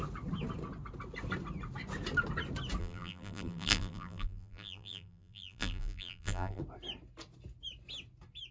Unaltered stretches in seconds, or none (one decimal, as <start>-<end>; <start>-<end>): 0.0-2.8; 6.6-8.5